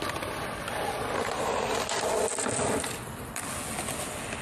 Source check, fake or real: real